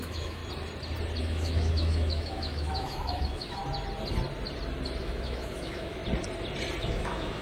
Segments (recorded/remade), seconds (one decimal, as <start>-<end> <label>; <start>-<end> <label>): 0.0-0.4 remade; 0.4-1.2 recorded; 1.2-3.6 remade; 3.6-5.0 recorded; 5.0-6.0 remade; 6.0-6.8 recorded; 6.8-7.4 remade